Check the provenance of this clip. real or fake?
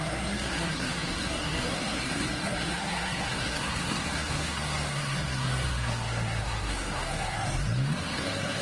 fake